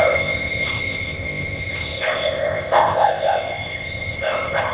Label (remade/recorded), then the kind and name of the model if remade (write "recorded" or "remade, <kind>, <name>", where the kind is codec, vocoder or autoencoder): remade, codec, ZipCodec